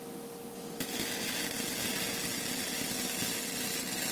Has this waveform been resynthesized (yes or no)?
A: no